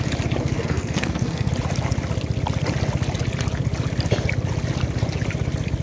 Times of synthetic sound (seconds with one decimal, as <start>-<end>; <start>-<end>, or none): 0.4-1.5